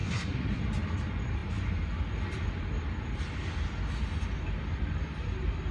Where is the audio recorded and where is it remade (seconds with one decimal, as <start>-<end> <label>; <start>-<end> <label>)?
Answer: 0.0-0.6 remade; 0.6-5.7 recorded